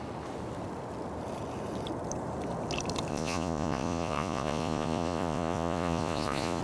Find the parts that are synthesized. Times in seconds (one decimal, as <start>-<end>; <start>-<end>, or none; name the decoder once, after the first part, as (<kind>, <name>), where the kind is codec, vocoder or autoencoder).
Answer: 3.1-6.6 (vocoder, Vocos)